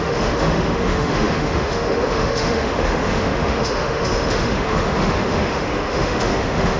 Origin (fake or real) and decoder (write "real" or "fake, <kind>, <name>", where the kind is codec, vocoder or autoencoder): fake, autoencoder, DAC-VAE